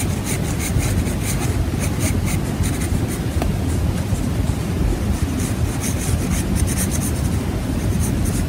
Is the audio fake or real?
real